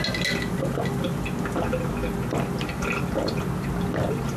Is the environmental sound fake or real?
real